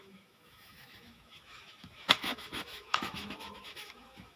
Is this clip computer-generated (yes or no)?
yes